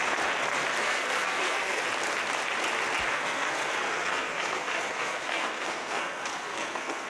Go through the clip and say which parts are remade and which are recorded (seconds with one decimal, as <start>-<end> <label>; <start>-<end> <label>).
0.0-0.8 recorded; 0.8-1.8 remade; 1.8-3.1 recorded; 3.1-7.1 remade